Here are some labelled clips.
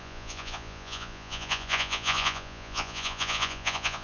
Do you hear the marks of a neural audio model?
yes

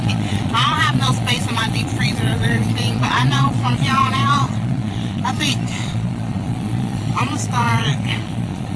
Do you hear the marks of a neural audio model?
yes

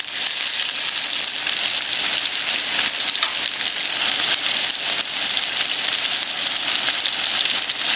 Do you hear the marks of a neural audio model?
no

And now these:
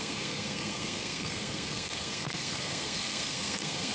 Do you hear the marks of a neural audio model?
yes